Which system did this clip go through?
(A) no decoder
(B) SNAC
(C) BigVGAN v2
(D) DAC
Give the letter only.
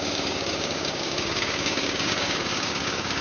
D